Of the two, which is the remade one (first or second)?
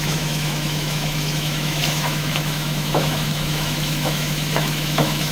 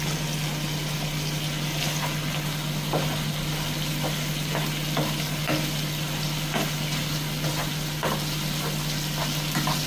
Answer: first